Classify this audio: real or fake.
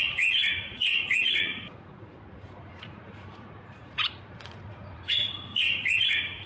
fake